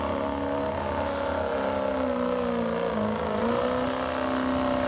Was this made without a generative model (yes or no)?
yes